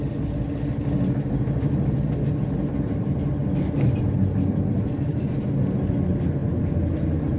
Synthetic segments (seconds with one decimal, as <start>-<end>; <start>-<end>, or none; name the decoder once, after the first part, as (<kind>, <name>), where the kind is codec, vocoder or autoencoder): none